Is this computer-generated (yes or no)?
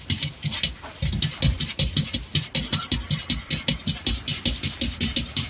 no